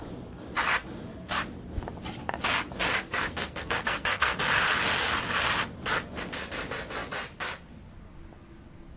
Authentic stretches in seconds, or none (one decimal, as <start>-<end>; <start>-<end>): 0.0-3.1; 4.4-9.0